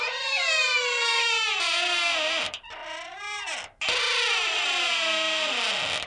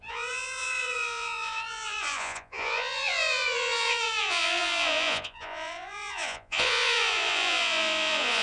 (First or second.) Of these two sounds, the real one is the first